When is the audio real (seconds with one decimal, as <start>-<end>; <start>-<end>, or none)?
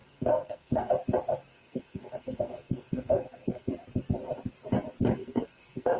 0.9-1.5; 3.7-5.2